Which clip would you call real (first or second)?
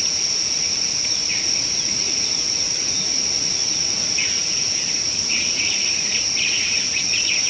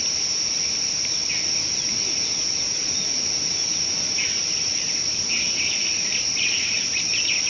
second